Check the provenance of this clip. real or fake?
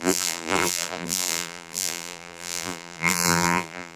fake